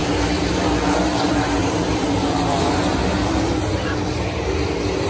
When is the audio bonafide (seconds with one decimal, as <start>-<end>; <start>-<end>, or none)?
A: 0.0-1.6; 2.2-5.1